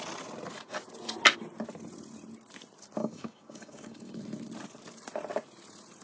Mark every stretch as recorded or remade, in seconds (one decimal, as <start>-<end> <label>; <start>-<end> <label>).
0.0-3.0 recorded; 3.0-4.2 remade; 4.2-6.0 recorded